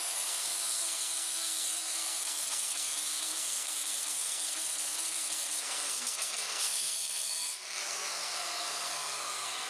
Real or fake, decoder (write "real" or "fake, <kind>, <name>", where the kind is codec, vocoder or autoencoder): fake, codec, SNAC